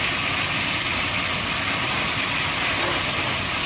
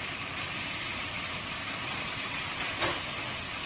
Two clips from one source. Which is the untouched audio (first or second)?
first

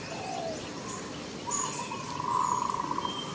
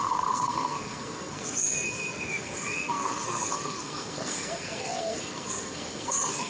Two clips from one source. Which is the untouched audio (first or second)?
first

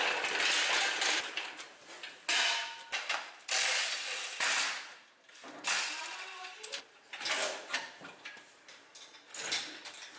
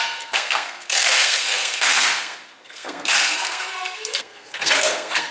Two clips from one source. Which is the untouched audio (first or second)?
first